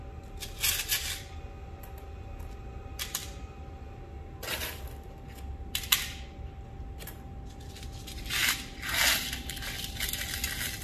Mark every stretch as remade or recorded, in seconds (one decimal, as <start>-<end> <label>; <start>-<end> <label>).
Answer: 0.0-10.8 recorded